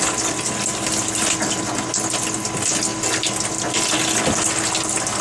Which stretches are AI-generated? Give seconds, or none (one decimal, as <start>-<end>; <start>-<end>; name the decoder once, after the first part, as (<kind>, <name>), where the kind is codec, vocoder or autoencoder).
none